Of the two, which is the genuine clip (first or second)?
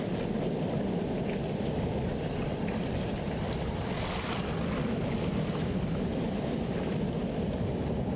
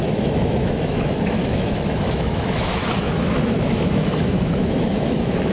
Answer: first